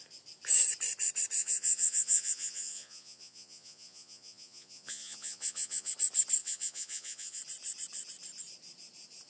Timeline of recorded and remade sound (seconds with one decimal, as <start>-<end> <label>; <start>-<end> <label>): 0.0-1.4 recorded; 1.4-5.9 remade; 5.9-6.4 recorded; 6.4-7.4 remade; 7.4-9.3 recorded